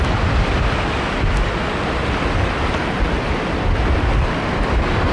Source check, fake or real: real